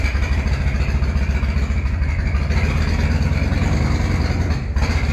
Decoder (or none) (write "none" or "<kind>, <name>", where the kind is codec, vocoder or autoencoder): none